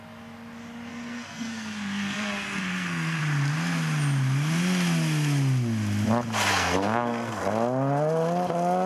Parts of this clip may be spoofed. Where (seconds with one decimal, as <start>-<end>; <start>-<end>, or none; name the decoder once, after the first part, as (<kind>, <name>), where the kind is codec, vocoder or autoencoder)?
0.9-3.2 (codec, SNAC); 6.5-7.4